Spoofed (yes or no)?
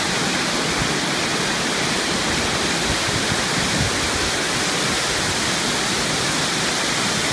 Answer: no